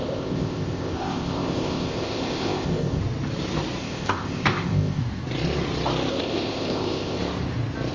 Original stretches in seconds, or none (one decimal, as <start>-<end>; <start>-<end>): 3.0-3.8; 5.0-6.1; 7.2-7.9